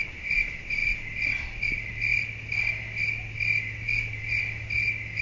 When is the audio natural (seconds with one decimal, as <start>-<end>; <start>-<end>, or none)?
0.0-5.2